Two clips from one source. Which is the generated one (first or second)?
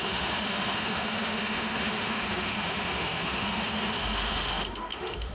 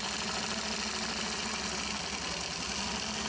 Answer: first